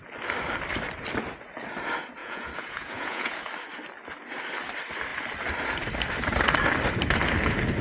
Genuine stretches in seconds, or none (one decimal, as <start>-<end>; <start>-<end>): 0.0-2.2; 3.5-7.8